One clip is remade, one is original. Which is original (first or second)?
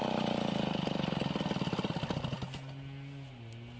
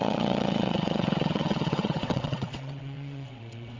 first